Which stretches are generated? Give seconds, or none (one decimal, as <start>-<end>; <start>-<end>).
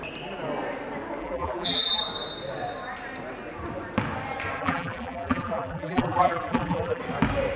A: 1.2-2.0; 4.6-7.0